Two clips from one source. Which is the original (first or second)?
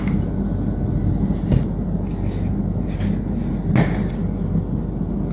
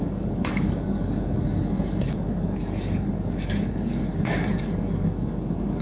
first